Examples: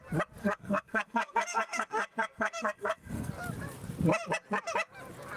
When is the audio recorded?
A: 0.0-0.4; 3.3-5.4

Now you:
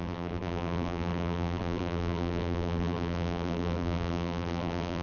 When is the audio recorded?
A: none

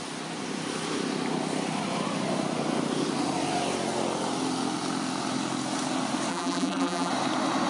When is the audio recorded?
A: 0.0-6.3; 7.1-7.7

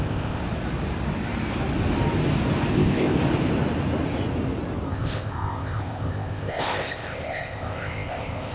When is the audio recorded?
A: 0.4-2.7; 3.2-4.9

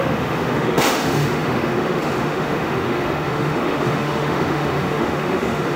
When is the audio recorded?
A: none

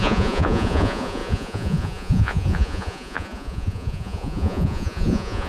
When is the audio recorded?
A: none

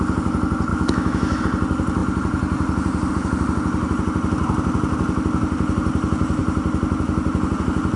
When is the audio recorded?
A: 0.0-0.7; 1.4-8.0

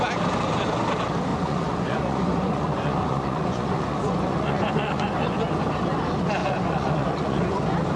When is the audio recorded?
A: 0.0-1.3; 5.4-6.4; 7.6-8.0